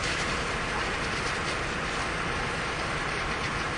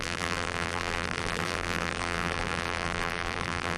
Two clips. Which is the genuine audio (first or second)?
first